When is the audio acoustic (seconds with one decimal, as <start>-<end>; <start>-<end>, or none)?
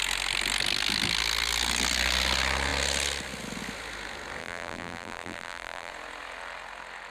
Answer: 0.0-4.4; 5.9-7.1